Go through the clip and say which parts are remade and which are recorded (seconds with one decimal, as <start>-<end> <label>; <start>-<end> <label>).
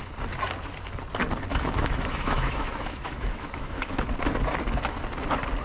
0.0-1.5 recorded; 1.5-4.1 remade; 4.1-5.6 recorded